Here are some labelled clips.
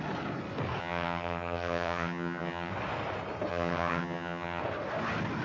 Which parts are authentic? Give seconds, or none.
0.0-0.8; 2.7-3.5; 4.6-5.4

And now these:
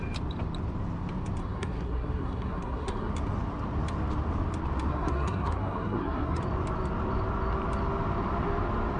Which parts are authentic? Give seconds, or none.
0.0-1.4; 3.1-4.9; 6.4-9.0